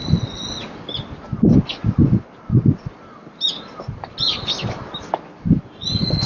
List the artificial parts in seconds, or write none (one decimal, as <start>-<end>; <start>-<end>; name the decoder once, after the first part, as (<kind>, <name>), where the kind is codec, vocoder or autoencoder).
none